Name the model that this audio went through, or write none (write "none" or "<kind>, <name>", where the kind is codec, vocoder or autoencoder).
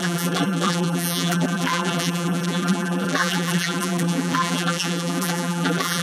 vocoder, BigVGAN v2